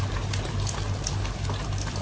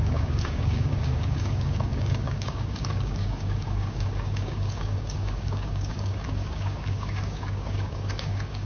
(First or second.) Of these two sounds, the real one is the first